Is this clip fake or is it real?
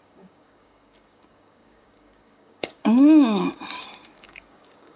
fake